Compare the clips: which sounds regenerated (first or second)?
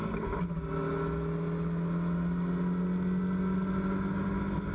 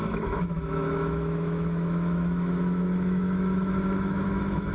second